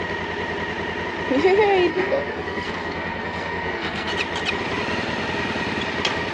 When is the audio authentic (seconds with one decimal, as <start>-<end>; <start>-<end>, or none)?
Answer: 0.0-1.9; 4.1-6.3